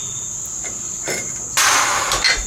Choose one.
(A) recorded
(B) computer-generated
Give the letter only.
A